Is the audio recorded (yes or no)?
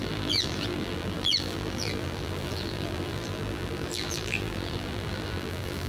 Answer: no